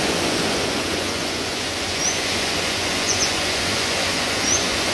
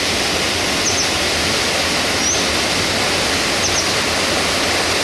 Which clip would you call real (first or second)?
second